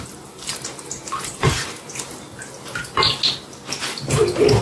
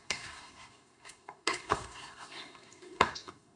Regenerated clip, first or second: second